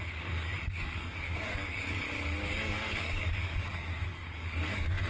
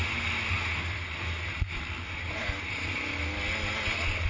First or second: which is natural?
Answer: second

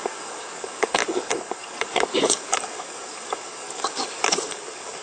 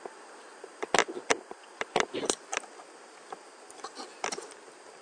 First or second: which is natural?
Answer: second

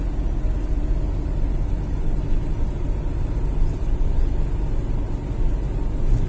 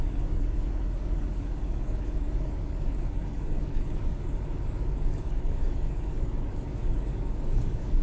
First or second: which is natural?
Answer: first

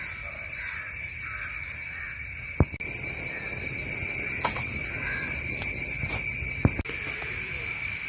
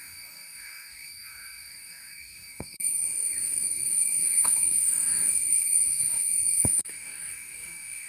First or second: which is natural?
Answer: first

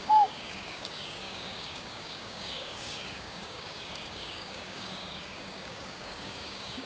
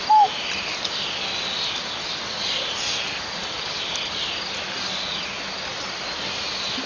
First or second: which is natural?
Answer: second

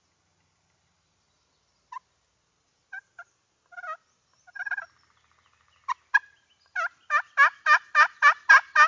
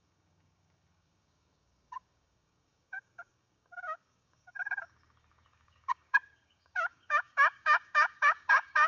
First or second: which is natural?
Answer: first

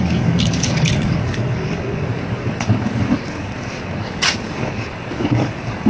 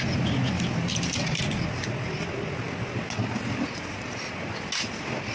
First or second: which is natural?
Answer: second